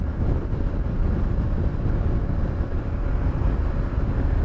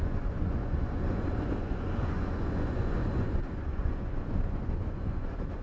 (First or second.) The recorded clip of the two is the first